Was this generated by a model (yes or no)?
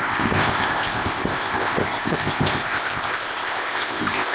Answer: yes